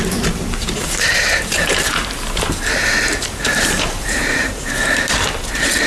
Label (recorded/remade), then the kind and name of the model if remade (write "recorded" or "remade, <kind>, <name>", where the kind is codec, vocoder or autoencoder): remade, vocoder, BigVGAN v2